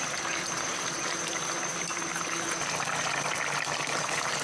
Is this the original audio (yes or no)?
yes